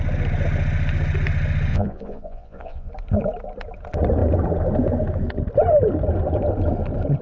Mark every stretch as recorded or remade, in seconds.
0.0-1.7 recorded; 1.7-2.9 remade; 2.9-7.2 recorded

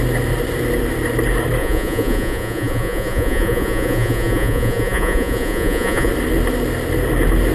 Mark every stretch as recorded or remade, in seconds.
0.0-1.6 recorded; 1.6-6.1 remade; 6.1-7.5 recorded

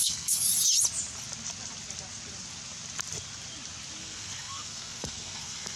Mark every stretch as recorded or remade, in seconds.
0.0-0.5 remade; 0.5-4.0 recorded; 4.0-5.8 remade

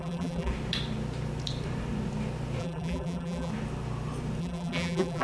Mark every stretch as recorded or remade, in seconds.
0.0-0.5 remade; 0.5-2.6 recorded; 2.6-3.5 remade; 3.5-4.4 recorded; 4.4-5.2 remade

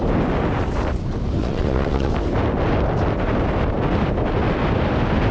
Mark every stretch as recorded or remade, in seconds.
0.0-1.4 recorded; 1.4-2.1 remade; 2.1-5.3 recorded

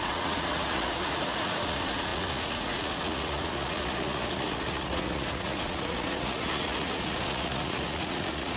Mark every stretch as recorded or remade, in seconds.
0.0-8.6 remade

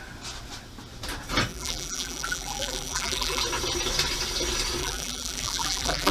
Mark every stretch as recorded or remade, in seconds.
0.0-1.5 recorded; 1.5-3.4 remade; 3.4-4.8 recorded; 4.8-6.1 remade